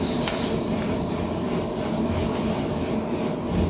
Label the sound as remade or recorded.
recorded